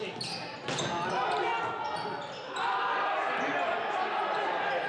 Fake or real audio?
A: real